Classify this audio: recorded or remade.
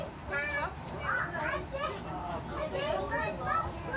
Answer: recorded